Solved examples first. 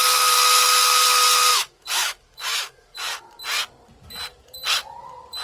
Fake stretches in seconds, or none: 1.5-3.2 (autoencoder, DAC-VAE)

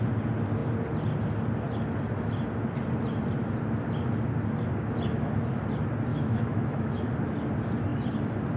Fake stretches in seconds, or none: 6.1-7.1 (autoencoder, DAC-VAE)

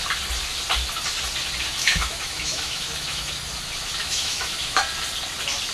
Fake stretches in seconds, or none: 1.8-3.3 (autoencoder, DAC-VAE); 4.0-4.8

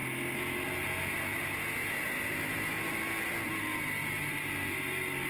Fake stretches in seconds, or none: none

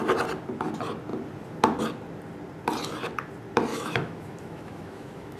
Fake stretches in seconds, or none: 3.7-5.4 (autoencoder, DAC-VAE)

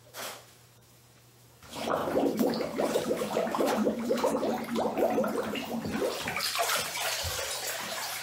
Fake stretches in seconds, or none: 0.0-4.5 (autoencoder, DAC-VAE)